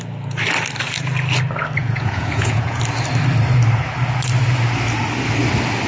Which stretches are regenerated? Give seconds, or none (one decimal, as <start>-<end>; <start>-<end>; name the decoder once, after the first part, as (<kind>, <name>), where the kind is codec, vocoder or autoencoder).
1.8-2.8 (vocoder, Vocos)